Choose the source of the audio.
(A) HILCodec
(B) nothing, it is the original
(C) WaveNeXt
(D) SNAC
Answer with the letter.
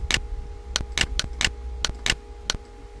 B